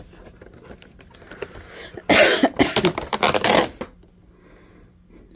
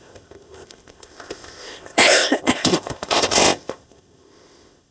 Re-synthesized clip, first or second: second